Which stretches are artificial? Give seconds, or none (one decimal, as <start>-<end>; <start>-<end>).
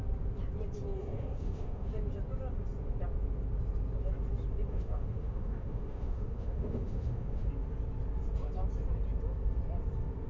1.0-1.9; 4.7-7.5